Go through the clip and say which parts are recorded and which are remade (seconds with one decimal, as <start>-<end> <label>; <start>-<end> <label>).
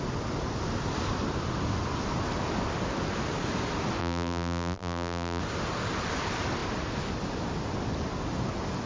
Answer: 0.0-4.0 recorded; 4.0-5.4 remade; 5.4-8.9 recorded